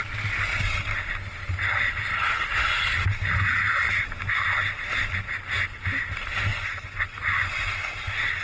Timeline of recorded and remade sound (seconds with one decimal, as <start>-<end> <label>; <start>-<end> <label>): 0.0-6.5 recorded; 6.5-7.6 remade; 7.6-8.4 recorded